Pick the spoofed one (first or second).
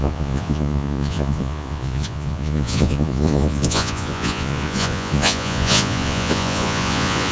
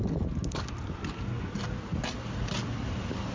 first